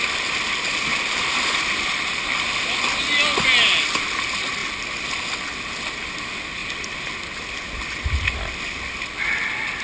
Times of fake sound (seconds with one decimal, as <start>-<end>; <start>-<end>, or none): 0.9-2.1